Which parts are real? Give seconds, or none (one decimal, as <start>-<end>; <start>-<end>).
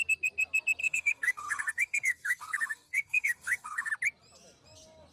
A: 0.0-0.8; 3.9-5.1